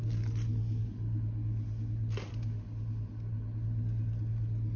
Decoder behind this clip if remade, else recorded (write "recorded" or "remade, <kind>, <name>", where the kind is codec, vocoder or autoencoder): recorded